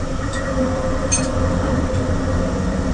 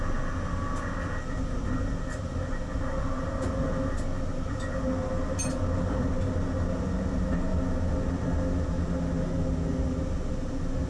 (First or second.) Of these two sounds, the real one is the second